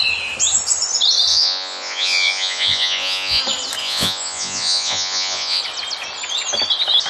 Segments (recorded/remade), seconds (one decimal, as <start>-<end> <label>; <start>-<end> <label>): 0.0-1.3 recorded; 1.3-3.4 remade; 3.4-3.8 recorded; 3.8-5.6 remade; 5.6-7.1 recorded